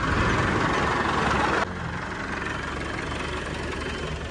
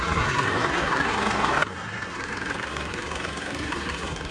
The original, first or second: first